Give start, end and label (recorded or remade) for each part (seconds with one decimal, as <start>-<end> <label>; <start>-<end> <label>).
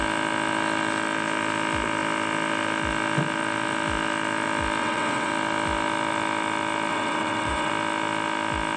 0.0-4.8 recorded; 4.8-5.3 remade; 5.3-6.9 recorded; 6.9-7.7 remade; 7.7-8.8 recorded